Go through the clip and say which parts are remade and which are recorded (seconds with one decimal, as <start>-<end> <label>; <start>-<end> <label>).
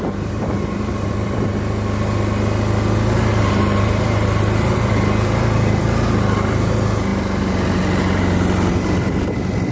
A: 0.0-1.5 remade; 1.5-3.3 recorded; 3.3-7.1 remade; 7.1-9.7 recorded